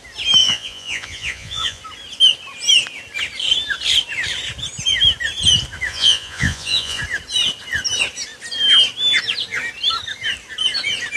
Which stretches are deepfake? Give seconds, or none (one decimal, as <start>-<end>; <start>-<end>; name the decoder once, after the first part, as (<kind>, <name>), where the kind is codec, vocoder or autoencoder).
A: 0.4-1.8 (vocoder, Vocos); 5.9-7.0